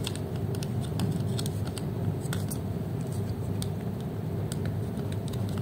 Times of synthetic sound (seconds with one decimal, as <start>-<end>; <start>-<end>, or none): none